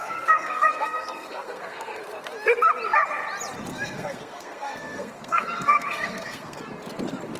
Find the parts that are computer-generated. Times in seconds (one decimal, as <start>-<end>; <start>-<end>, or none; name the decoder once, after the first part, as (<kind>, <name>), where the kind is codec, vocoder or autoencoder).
0.0-2.0 (codec, SNAC); 3.7-6.6